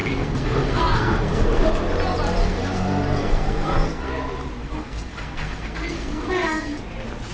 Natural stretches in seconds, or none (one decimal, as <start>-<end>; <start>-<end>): 1.6-2.4; 4.1-4.6; 6.8-7.3